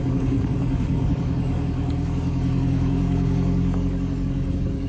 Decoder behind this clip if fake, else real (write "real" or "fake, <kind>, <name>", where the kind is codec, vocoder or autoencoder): fake, codec, DAC